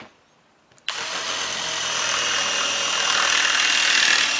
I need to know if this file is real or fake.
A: real